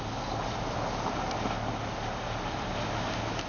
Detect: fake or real real